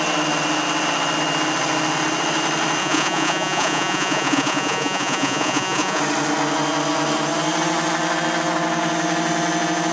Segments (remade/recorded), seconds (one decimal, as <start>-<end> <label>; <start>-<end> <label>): 0.0-2.8 recorded; 2.8-6.0 remade; 6.0-9.9 recorded